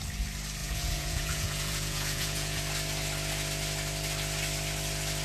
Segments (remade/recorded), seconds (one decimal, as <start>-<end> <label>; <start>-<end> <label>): 0.0-0.6 recorded; 0.6-2.6 remade; 2.6-5.2 recorded